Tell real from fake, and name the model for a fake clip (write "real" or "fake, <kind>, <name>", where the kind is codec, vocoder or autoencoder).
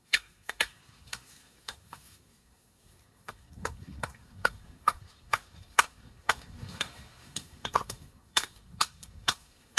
fake, codec, SNAC